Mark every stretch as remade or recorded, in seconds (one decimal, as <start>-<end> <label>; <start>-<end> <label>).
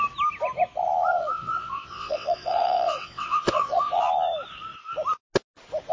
0.0-1.2 recorded; 1.2-4.0 remade; 4.0-5.9 recorded